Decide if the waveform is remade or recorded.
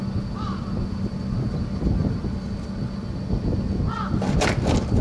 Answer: recorded